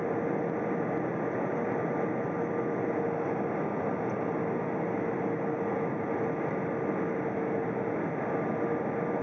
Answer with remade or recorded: recorded